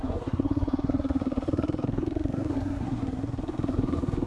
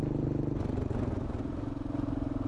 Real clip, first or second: second